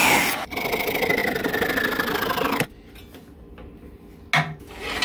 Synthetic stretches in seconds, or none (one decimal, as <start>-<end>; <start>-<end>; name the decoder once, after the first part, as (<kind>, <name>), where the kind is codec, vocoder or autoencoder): none